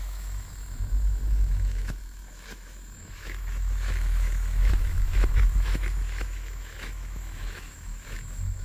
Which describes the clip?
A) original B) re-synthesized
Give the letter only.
B